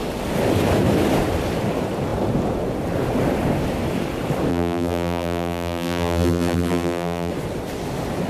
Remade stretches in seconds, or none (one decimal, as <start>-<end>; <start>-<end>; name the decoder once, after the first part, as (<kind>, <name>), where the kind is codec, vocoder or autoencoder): 4.5-7.3 (vocoder, BigVGAN v2)